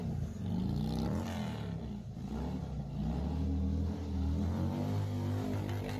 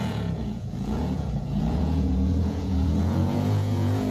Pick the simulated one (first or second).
second